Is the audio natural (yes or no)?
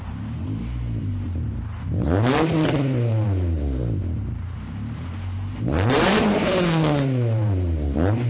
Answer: no